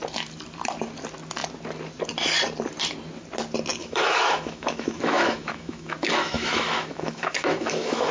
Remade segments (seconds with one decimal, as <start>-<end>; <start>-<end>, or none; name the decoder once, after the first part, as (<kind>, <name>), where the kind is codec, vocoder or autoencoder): 3.8-8.1 (autoencoder, DAC-VAE)